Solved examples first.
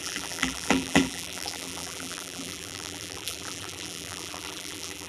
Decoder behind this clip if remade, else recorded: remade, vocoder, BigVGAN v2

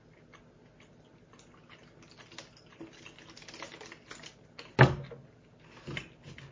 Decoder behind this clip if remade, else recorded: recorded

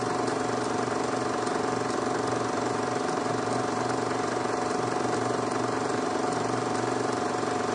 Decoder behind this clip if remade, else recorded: remade, vocoder, BigVGAN v2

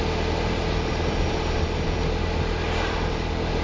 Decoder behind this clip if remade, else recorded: recorded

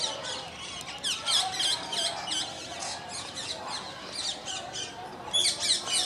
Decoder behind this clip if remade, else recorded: recorded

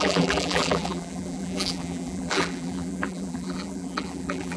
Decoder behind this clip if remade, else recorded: remade, vocoder, BigVGAN v2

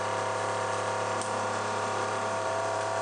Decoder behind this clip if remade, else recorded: remade, vocoder, BigVGAN v2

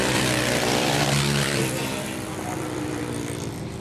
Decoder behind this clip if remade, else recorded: remade, vocoder, BigVGAN v2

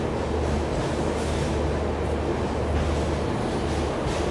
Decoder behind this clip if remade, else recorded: recorded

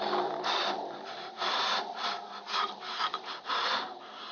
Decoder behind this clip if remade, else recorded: recorded